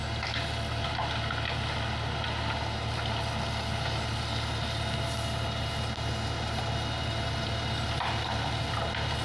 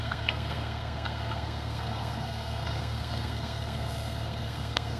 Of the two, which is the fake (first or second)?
second